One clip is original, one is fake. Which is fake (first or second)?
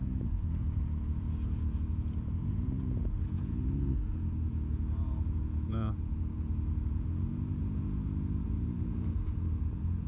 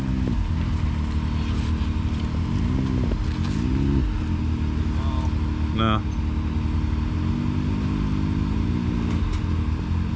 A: first